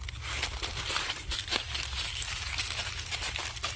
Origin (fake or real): real